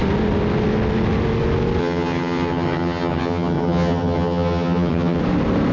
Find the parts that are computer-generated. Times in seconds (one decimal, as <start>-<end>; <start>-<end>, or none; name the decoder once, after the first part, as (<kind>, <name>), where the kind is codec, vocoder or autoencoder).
1.8-5.2 (vocoder, HiFi-GAN)